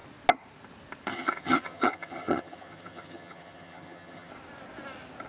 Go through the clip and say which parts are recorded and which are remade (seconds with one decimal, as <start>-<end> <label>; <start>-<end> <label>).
0.0-1.1 recorded; 1.1-4.3 remade; 4.3-5.3 recorded